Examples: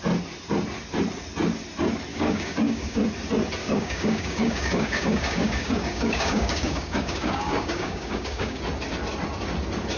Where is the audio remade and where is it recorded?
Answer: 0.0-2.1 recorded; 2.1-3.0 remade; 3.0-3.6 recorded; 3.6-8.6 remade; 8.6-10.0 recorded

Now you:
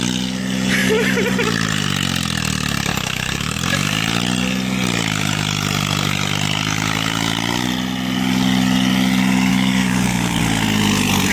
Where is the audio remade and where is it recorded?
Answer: 0.0-2.9 recorded; 2.9-3.6 remade; 3.6-9.5 recorded; 9.5-10.4 remade; 10.4-11.3 recorded

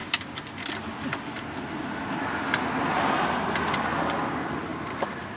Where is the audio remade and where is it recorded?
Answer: 0.0-5.4 recorded

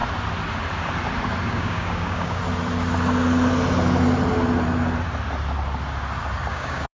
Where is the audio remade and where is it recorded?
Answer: 0.0-1.4 recorded; 1.4-2.4 remade; 2.4-6.5 recorded; 6.5-6.9 remade

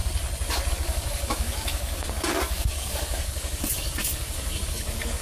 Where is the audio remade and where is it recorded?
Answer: 0.0-0.7 recorded; 0.7-5.2 remade